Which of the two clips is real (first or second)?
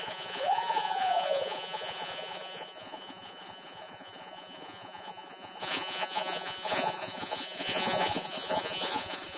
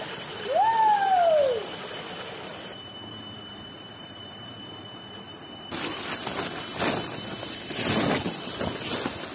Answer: second